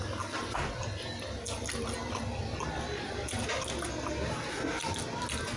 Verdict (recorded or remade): recorded